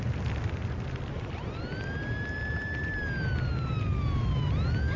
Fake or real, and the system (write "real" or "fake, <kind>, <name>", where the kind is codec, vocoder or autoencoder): real